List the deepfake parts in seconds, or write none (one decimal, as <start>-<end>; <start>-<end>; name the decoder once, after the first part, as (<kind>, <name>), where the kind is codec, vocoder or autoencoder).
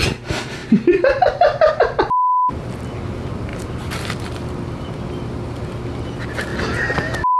0.6-1.7 (vocoder, BigVGAN v2); 3.5-4.9